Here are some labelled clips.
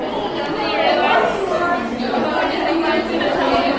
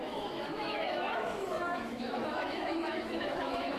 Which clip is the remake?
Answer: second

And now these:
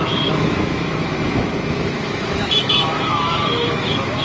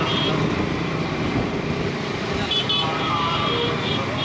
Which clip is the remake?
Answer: first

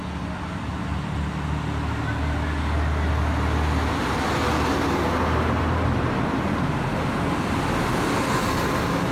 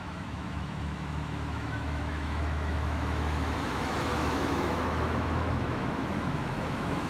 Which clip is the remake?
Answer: second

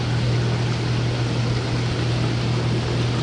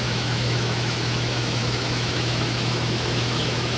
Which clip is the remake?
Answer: second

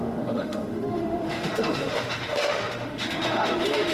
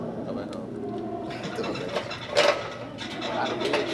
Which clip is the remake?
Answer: first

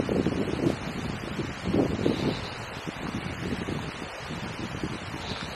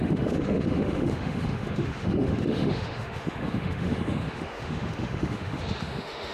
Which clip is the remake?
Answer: second